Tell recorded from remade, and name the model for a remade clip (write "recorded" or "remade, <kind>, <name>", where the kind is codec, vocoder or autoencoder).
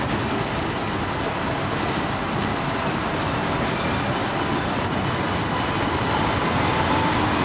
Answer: recorded